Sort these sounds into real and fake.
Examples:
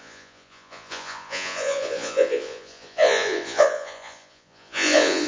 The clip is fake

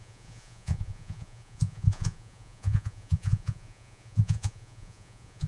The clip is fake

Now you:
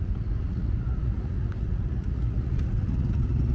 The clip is fake